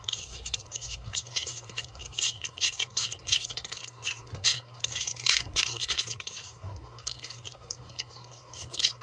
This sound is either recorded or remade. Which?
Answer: remade